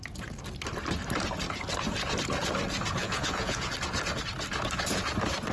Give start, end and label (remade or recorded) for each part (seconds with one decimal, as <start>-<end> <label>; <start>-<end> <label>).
0.0-3.0 recorded; 3.0-3.7 remade; 3.7-5.5 recorded